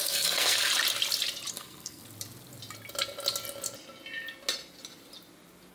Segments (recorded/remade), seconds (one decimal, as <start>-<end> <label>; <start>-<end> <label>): 0.0-0.7 remade; 0.7-1.5 recorded; 1.5-2.0 remade; 2.0-5.7 recorded